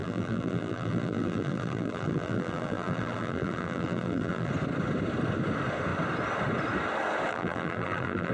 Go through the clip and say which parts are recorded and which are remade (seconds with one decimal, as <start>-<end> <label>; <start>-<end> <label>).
0.0-4.5 remade; 4.5-7.3 recorded; 7.3-8.3 remade